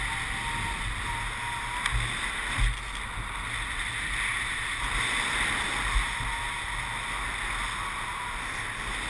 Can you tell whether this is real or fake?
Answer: real